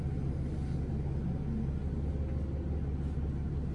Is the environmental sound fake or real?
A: real